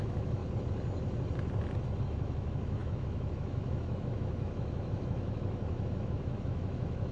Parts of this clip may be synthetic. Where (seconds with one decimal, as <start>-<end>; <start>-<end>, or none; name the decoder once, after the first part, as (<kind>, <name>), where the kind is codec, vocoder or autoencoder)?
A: 0.0-0.4 (autoencoder, DAC-VAE); 2.0-7.1